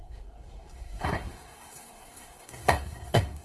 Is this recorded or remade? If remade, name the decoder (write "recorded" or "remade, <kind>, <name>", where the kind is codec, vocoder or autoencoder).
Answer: remade, codec, SNAC